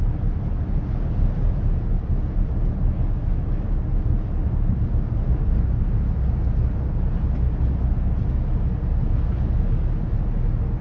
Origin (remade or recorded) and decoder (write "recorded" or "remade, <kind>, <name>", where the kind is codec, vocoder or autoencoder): recorded